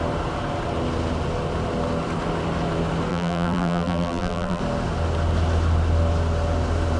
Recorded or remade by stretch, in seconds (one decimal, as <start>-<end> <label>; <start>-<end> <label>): 0.0-3.1 recorded; 3.1-4.6 remade; 4.6-7.0 recorded